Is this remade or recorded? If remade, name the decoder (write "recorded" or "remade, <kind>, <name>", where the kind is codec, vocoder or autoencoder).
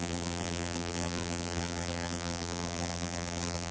remade, vocoder, BigVGAN v2